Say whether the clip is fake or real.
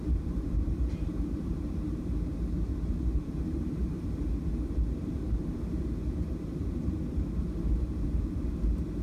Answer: fake